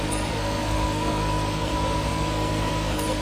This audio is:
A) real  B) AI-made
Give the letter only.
B